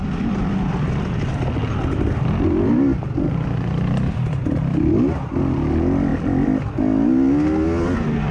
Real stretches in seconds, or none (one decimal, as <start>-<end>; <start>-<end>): 0.0-1.6; 5.3-6.1; 6.7-8.3